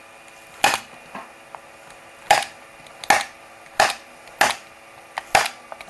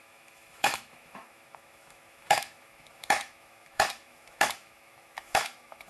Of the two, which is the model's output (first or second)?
second